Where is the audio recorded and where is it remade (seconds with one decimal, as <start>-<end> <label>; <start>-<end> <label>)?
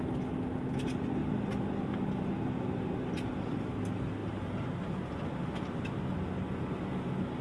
0.0-7.4 recorded